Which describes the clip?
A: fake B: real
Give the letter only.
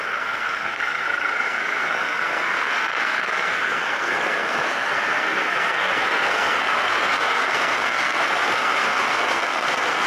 A